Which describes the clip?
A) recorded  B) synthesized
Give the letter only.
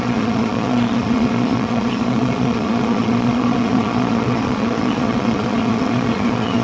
B